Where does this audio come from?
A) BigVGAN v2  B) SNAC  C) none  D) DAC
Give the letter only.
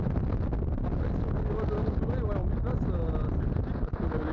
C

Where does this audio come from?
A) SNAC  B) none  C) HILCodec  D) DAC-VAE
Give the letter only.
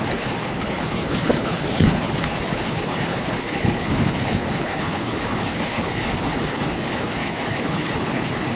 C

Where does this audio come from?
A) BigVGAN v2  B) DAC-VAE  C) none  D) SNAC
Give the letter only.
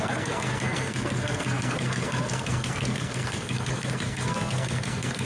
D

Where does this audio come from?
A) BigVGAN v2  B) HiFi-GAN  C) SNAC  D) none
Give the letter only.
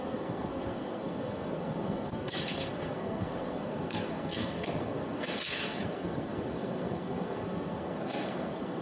C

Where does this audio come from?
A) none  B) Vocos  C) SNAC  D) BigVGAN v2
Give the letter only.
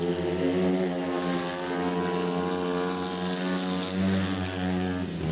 A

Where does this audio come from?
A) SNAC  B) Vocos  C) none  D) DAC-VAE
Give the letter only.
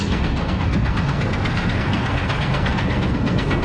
A